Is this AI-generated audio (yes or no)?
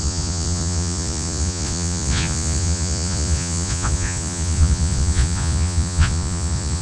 yes